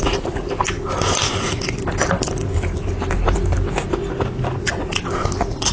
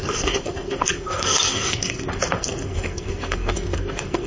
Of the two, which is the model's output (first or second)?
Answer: second